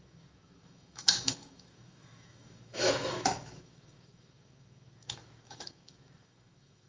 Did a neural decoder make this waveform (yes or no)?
yes